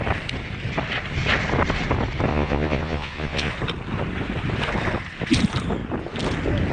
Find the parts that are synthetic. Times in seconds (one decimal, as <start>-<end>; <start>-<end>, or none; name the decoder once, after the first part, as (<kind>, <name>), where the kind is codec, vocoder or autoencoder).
2.3-3.5 (vocoder, Vocos)